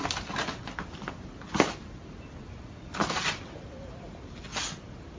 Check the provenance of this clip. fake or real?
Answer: real